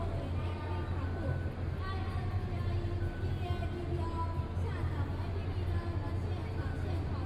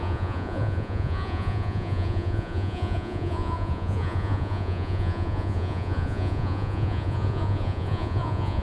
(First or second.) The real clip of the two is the first